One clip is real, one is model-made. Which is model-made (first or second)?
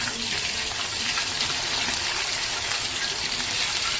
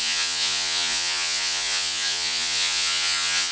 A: second